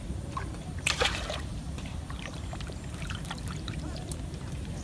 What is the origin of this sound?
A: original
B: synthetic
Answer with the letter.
B